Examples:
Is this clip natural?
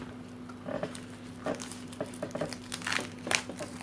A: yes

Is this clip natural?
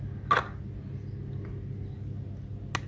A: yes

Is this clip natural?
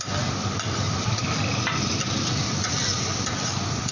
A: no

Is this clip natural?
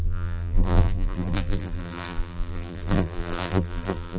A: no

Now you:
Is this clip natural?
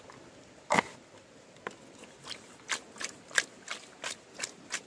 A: yes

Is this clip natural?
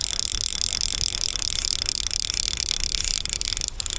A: yes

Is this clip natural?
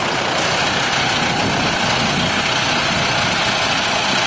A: yes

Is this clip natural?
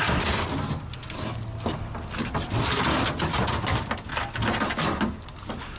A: yes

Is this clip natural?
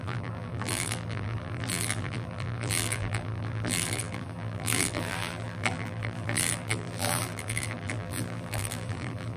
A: no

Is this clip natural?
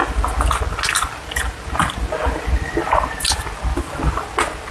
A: yes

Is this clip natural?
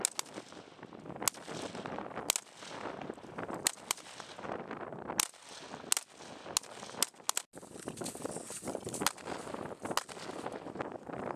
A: yes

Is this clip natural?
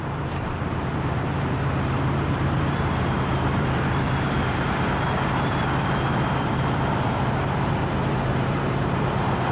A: no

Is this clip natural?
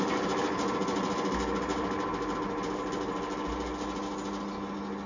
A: yes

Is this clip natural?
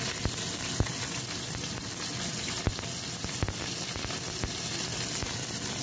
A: yes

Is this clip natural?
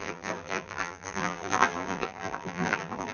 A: no